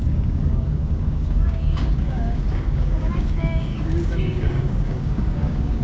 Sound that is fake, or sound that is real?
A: fake